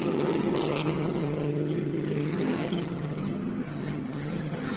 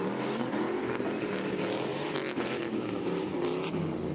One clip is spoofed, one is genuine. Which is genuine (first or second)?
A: second